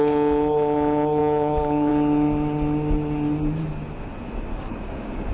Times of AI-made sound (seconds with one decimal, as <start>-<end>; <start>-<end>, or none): 1.2-1.9; 4.5-5.3